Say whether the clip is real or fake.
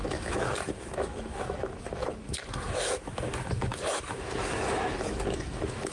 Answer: fake